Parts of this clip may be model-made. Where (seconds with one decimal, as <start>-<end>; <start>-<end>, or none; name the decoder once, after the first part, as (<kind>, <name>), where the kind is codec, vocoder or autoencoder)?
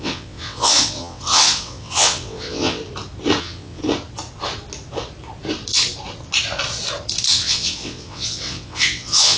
0.0-2.8 (vocoder, WaveNeXt); 3.4-3.8; 7.3-9.4